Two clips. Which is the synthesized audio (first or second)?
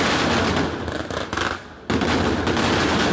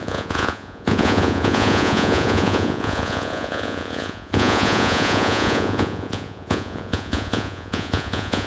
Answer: second